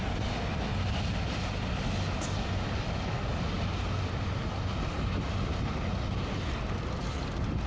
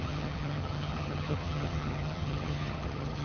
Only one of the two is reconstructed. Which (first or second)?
second